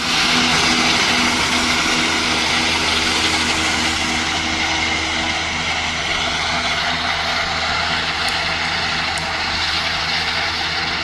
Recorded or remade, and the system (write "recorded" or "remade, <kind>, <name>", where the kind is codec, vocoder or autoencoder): recorded